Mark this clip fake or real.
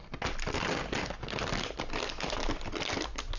real